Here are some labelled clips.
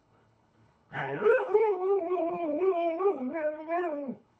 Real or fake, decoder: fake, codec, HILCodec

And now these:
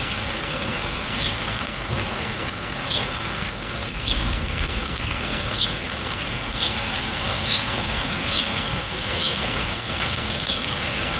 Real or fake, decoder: fake, codec, SNAC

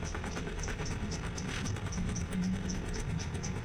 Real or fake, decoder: fake, codec, SNAC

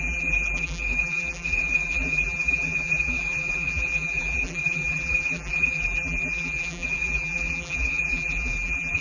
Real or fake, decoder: fake, vocoder, BigVGAN v2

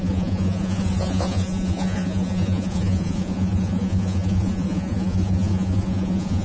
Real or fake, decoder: fake, vocoder, Vocos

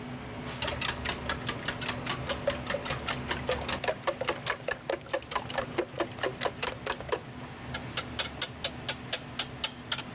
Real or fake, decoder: real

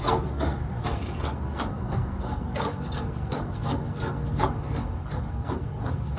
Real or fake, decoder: fake, codec, SNAC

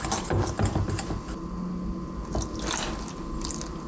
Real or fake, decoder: real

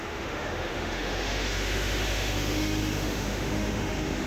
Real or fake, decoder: fake, autoencoder, DAC-VAE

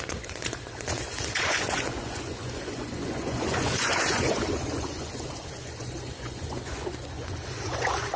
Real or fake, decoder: fake, vocoder, Vocos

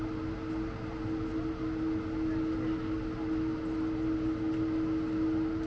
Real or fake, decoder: real